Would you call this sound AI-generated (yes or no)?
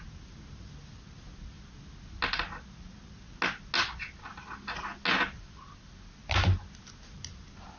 no